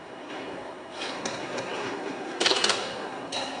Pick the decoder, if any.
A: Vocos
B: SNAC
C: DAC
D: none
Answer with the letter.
B